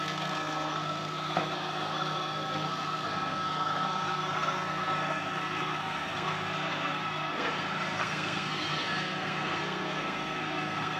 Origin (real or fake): fake